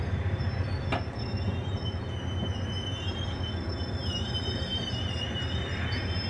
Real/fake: real